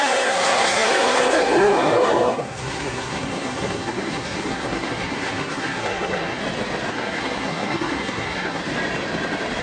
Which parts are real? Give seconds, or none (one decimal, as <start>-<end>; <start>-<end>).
6.4-6.9; 8.6-9.6